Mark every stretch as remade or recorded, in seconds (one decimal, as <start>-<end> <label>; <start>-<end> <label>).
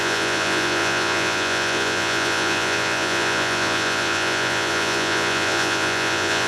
0.0-6.5 remade